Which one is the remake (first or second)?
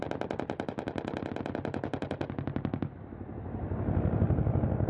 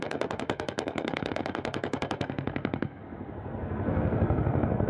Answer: second